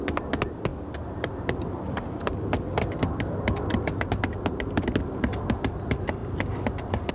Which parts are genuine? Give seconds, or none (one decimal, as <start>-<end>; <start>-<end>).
0.0-7.1